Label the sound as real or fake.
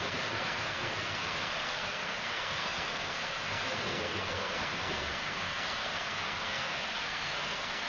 fake